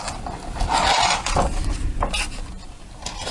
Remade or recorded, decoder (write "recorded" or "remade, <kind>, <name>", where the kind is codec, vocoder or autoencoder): recorded